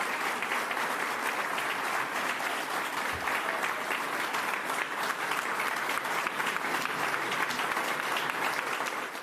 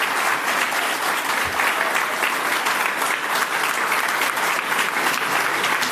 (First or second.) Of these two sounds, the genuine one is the second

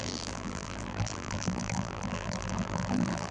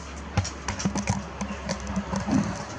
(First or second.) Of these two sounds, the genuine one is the second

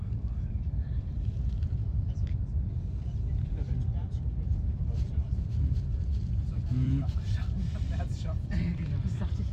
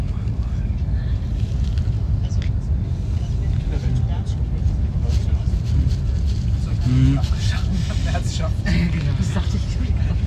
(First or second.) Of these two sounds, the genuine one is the second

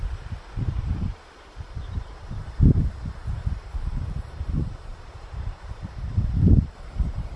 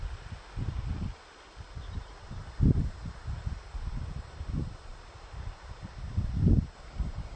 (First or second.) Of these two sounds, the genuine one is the second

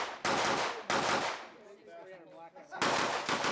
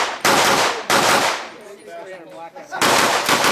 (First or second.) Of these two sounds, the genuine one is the first